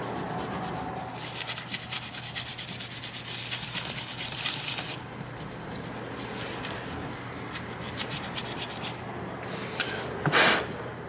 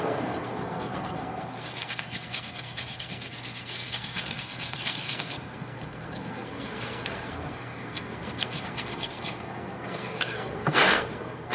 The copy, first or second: second